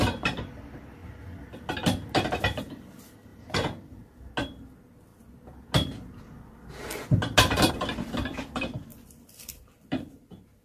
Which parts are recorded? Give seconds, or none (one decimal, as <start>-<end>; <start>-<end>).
0.0-3.3; 4.0-8.9; 10.1-10.6